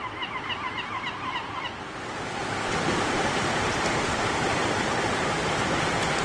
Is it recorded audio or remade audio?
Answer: remade